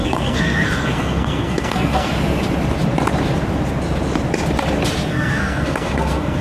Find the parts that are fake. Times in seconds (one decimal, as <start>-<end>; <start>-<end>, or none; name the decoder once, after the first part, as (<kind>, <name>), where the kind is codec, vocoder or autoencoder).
0.0-2.1 (codec, SNAC); 5.1-6.4